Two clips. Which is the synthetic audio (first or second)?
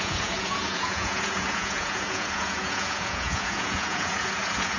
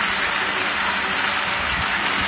first